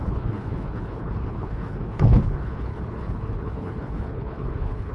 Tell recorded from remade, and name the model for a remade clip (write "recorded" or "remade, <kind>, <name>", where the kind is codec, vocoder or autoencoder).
remade, codec, HILCodec